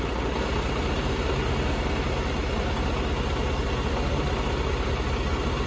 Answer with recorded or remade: recorded